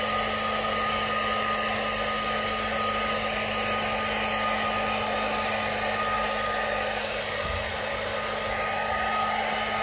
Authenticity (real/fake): real